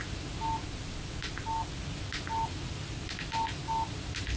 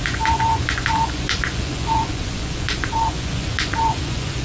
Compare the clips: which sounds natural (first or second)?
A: first